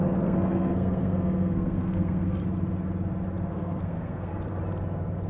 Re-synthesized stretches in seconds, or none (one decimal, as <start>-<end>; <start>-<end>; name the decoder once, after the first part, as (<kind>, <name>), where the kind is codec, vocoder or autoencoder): 0.0-2.4 (codec, SNAC); 3.5-4.3